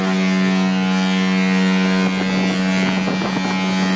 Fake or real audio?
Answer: real